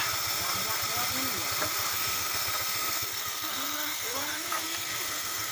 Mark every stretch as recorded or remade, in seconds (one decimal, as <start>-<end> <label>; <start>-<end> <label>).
0.0-1.9 recorded; 1.9-5.5 remade